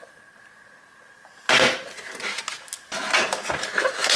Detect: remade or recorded recorded